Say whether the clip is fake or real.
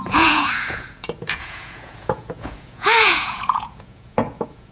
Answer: fake